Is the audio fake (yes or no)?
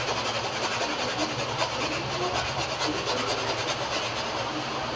no